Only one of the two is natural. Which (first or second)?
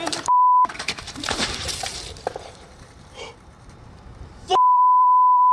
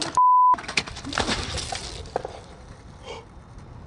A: second